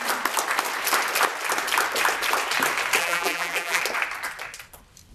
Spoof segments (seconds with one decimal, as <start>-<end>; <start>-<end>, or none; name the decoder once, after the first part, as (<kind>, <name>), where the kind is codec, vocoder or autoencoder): 3.0-3.8 (vocoder, BigVGAN v2)